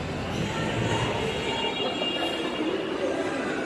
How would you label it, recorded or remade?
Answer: recorded